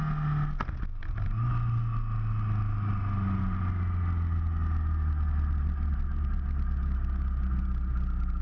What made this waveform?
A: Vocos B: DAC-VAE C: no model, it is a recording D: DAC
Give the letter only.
C